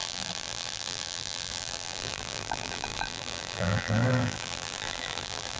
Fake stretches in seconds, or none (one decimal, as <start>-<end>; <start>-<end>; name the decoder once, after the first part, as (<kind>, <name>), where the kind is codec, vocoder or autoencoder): 0.0-5.6 (vocoder, BigVGAN v2)